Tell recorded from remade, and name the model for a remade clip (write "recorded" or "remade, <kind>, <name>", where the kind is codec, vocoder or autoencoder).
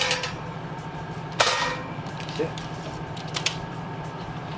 remade, vocoder, BigVGAN v2